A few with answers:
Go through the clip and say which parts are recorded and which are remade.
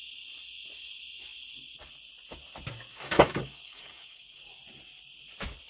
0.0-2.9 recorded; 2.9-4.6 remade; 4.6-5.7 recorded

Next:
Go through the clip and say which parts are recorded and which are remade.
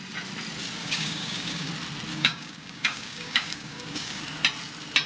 0.0-0.8 recorded; 0.8-1.7 remade; 1.7-2.1 recorded; 2.1-4.2 remade; 4.2-5.1 recorded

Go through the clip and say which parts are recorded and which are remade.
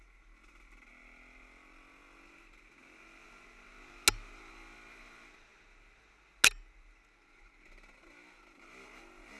0.0-9.4 recorded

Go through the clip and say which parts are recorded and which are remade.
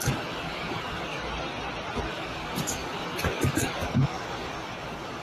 0.0-1.2 remade; 1.2-2.1 recorded; 2.1-5.2 remade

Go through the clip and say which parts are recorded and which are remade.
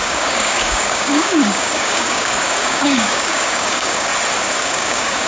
0.0-4.1 remade; 4.1-4.6 recorded; 4.6-5.3 remade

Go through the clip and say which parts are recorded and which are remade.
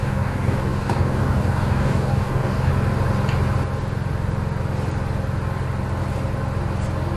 0.0-2.7 remade; 2.7-7.2 recorded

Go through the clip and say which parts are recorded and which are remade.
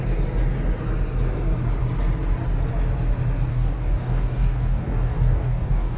0.0-3.5 recorded; 3.5-6.0 remade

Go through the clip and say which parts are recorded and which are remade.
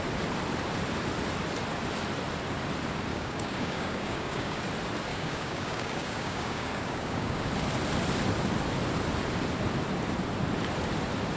0.0-3.1 recorded; 3.1-4.6 remade; 4.6-5.1 recorded; 5.1-7.5 remade; 7.5-11.4 recorded